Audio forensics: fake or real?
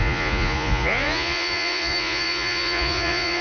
fake